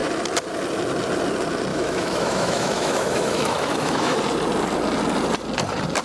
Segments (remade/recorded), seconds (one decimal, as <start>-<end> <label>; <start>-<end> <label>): 0.0-1.7 recorded; 1.7-4.2 remade; 4.2-6.0 recorded